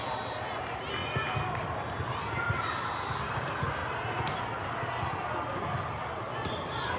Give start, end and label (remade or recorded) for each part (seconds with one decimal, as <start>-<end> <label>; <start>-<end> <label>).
0.0-3.8 remade; 3.8-5.9 recorded; 5.9-7.0 remade